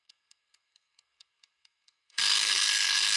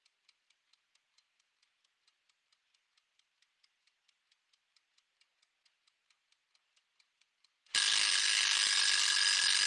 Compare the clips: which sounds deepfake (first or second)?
first